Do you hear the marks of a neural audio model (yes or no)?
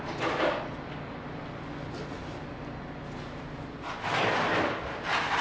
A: no